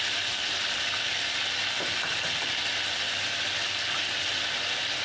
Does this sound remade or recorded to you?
recorded